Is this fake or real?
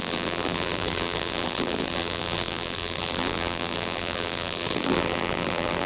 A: fake